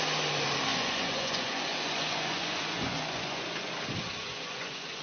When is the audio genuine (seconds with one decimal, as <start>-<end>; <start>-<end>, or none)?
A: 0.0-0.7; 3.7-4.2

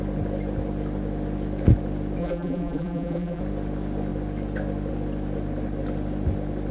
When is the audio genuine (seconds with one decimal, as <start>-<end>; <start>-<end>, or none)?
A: 0.0-2.2; 3.4-6.7

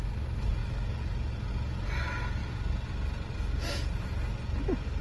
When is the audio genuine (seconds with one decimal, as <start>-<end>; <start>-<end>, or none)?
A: 0.0-5.0

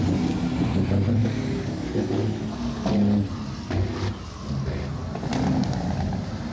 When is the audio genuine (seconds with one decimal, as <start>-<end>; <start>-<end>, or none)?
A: 0.0-1.2; 2.9-6.5

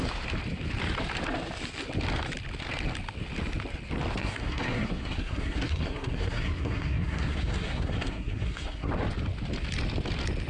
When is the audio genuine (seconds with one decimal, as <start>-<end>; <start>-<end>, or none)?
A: 0.0-4.2; 8.9-10.5

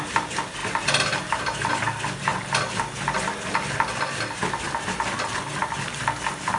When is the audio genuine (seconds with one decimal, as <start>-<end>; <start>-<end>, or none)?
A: 0.0-6.6